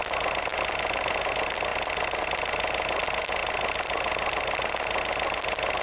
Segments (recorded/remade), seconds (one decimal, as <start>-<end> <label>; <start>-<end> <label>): 0.0-5.8 recorded